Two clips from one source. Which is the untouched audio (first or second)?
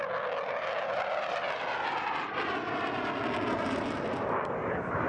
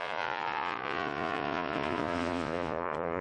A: first